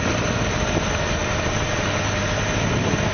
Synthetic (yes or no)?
no